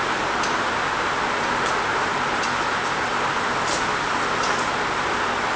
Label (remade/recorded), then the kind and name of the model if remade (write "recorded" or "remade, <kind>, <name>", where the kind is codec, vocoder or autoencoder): recorded